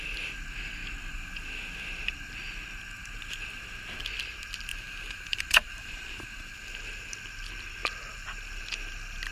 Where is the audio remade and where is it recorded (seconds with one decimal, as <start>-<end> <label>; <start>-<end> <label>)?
0.0-4.7 recorded; 4.7-6.2 remade; 6.2-9.3 recorded